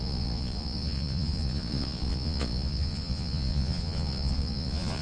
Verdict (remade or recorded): remade